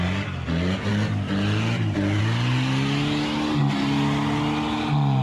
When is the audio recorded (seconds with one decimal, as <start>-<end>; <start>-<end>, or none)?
0.0-5.2